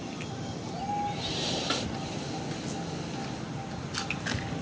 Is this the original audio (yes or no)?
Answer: yes